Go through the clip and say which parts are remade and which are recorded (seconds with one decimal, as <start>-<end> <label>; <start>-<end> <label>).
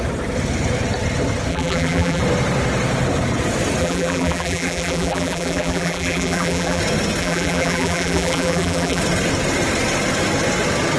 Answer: 0.0-1.5 recorded; 1.5-2.2 remade; 2.2-3.8 recorded; 3.8-6.8 remade; 6.8-7.2 recorded; 7.2-9.0 remade; 9.0-11.0 recorded